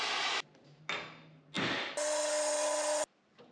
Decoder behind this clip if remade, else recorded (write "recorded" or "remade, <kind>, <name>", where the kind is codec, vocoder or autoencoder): recorded